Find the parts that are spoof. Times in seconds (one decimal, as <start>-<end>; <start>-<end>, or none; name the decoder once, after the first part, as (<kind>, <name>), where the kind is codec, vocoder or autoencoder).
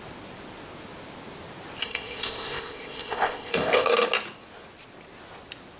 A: 1.8-3.9 (codec, ZipCodec)